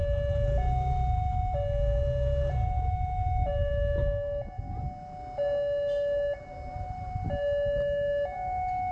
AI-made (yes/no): no